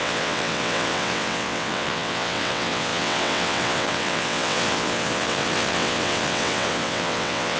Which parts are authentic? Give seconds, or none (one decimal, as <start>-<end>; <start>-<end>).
none